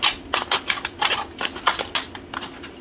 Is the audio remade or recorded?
recorded